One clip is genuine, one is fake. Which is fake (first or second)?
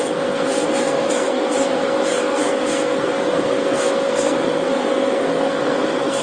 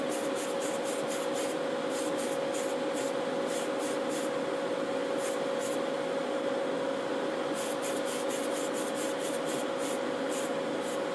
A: first